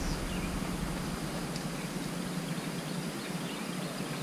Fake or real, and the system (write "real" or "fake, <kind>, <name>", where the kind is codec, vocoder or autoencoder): real